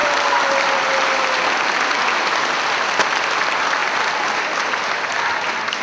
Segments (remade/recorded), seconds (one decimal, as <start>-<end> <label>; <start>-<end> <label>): 0.0-3.2 recorded; 3.2-3.8 remade; 3.8-4.8 recorded; 4.8-5.8 remade